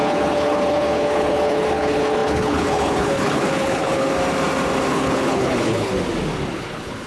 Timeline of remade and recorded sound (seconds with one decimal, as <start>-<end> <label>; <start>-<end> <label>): 0.0-4.1 remade; 4.1-4.9 recorded; 4.9-5.9 remade; 5.9-6.5 recorded; 6.5-7.1 remade